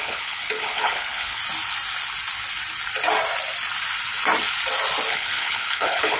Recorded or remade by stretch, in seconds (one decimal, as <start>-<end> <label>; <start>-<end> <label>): 0.0-1.4 remade; 1.4-5.1 recorded; 5.1-6.2 remade